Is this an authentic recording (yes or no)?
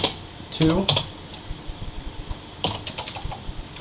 no